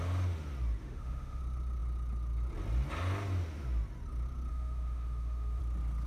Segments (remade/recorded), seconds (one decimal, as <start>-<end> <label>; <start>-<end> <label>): 0.0-0.8 recorded; 0.8-1.4 remade; 1.4-4.5 recorded; 4.5-5.6 remade; 5.6-6.1 recorded